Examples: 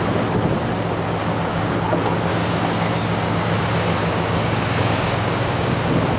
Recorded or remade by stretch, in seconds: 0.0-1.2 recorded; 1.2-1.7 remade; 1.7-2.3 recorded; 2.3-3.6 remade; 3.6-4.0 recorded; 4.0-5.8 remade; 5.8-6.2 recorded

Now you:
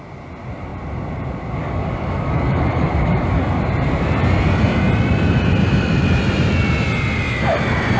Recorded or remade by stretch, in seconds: 0.0-1.6 recorded; 1.6-3.6 remade; 3.6-8.0 recorded

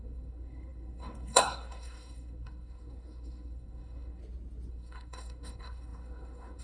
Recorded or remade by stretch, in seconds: 0.0-4.2 remade; 4.2-4.7 recorded; 4.7-6.6 remade